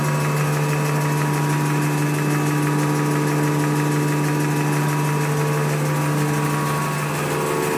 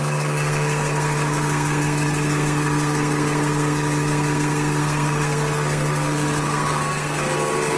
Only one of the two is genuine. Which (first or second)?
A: first